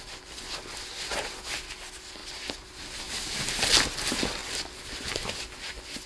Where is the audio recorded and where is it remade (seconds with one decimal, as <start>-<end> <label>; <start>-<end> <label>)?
0.0-6.1 recorded